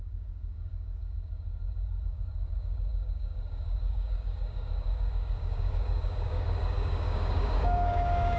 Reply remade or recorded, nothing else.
remade